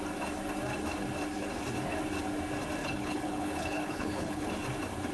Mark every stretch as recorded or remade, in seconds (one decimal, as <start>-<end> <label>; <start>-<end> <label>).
0.0-2.8 recorded; 2.8-4.5 remade; 4.5-5.1 recorded